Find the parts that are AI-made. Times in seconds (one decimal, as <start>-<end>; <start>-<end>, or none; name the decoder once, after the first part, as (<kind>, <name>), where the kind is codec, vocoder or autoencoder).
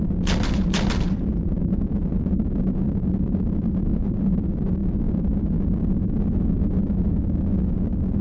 none